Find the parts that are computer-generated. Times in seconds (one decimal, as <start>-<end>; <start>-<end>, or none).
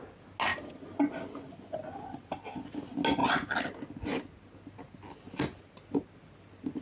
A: none